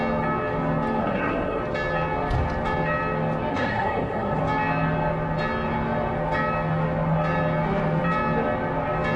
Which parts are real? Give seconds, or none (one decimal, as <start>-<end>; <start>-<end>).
0.0-1.0; 1.6-3.5; 4.4-9.2